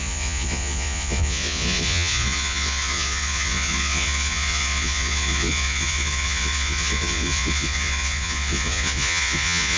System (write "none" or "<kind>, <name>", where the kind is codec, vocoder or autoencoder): vocoder, Vocos